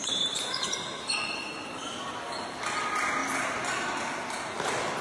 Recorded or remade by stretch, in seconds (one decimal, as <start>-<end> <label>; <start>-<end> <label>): 0.0-2.3 remade; 2.3-5.0 recorded